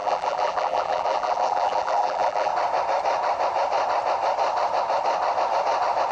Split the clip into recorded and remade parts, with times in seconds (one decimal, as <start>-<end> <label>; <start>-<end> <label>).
0.0-2.5 remade; 2.5-6.1 recorded